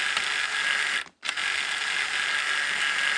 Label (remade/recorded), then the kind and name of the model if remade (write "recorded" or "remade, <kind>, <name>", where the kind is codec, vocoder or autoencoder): recorded